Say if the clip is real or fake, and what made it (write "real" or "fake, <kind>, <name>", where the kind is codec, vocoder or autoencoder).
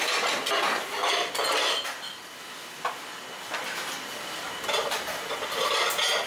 real